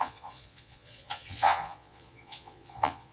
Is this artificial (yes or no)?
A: yes